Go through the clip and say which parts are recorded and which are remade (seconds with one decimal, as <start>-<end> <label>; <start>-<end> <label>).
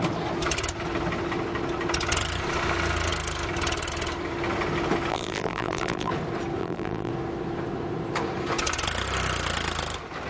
0.0-5.1 recorded; 5.1-6.1 remade; 6.1-6.6 recorded; 6.6-7.1 remade; 7.1-10.3 recorded